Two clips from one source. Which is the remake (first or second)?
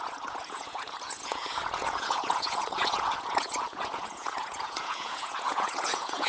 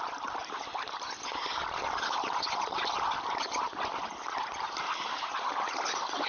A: first